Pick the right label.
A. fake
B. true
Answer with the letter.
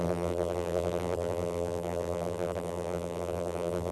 A